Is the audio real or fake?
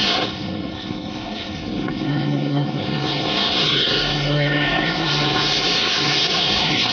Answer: fake